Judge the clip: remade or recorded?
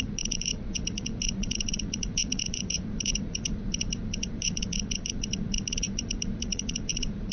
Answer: remade